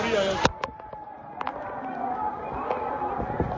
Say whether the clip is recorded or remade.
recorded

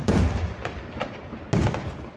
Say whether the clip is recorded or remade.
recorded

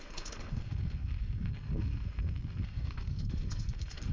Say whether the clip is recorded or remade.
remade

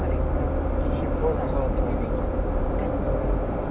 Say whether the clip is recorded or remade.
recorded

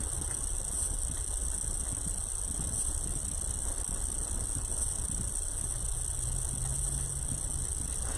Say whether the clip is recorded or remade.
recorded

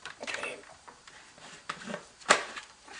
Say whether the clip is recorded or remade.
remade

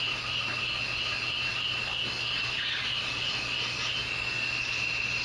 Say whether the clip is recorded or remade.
recorded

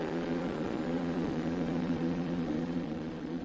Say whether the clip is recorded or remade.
remade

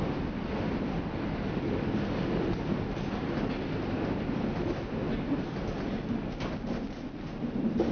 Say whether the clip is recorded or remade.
recorded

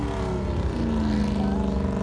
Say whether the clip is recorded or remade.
recorded